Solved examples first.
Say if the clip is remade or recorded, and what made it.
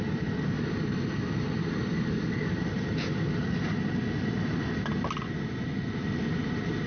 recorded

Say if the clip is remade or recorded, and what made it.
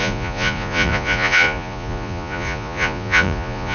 remade, vocoder, Vocos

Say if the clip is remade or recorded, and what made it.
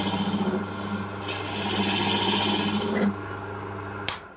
recorded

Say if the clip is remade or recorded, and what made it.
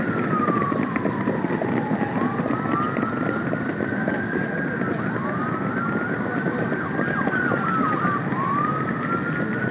recorded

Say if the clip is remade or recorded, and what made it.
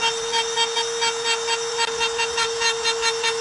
recorded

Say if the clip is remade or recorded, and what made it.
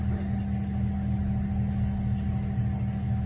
recorded